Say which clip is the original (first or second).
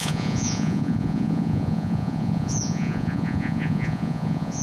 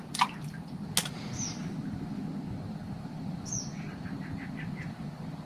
second